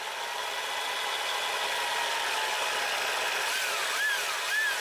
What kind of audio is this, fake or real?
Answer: real